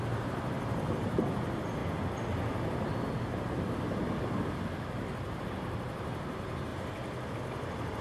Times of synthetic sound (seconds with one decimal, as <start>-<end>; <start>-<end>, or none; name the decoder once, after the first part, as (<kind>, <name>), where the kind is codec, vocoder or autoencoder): 0.0-1.8 (vocoder, BigVGAN v2); 5.4-6.7